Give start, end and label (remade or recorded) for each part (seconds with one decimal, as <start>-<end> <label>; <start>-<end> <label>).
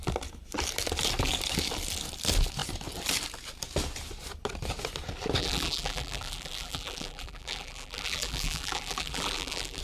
0.0-5.4 recorded; 5.4-9.8 remade